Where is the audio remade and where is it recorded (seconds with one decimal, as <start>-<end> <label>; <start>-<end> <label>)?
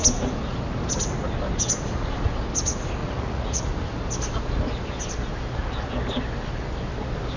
0.0-3.0 recorded; 3.0-3.7 remade; 3.7-7.4 recorded